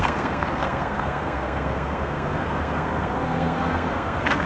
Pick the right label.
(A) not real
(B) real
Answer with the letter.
A